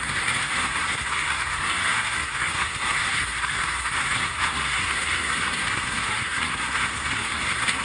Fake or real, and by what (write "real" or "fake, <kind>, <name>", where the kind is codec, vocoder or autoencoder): fake, codec, SNAC